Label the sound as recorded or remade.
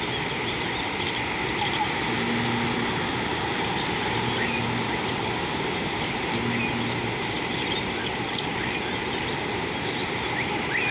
recorded